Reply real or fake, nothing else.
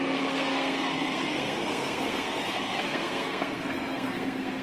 fake